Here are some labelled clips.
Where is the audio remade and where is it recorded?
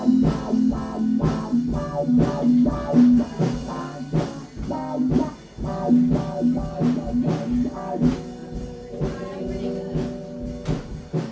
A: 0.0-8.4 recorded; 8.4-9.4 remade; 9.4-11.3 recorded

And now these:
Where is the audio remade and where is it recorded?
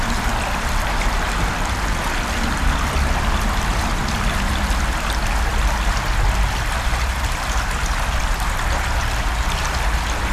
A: 0.0-10.3 recorded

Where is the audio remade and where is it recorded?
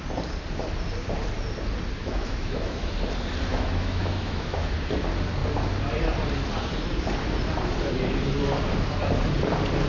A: 0.0-2.0 recorded; 2.0-2.9 remade; 2.9-3.5 recorded; 3.5-4.7 remade; 4.7-9.9 recorded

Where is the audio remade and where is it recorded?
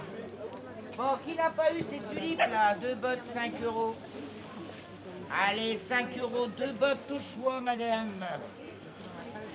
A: 0.0-7.0 recorded; 7.0-9.0 remade; 9.0-9.5 recorded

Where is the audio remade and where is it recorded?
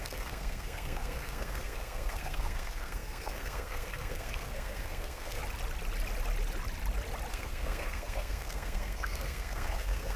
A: 0.0-5.4 remade; 5.4-7.3 recorded; 7.3-10.2 remade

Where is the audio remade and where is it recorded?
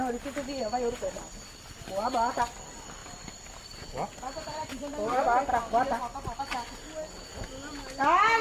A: 0.0-8.4 recorded